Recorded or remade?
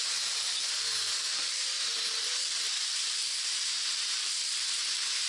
remade